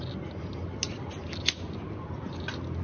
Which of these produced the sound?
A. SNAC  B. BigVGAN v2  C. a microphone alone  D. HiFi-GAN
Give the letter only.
C